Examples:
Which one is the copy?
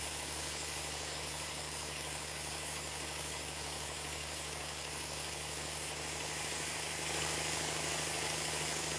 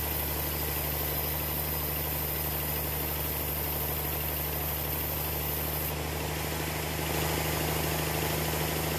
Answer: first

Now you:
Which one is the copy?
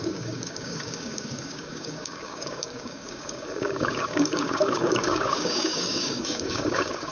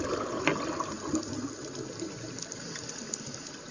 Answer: first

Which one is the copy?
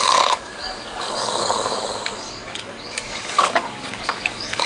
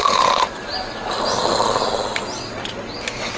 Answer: first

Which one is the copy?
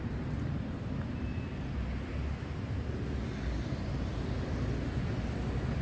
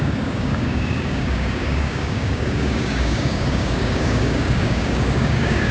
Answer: second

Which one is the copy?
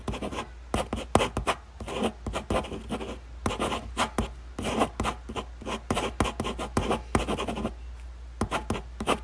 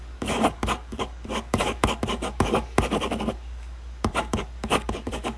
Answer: second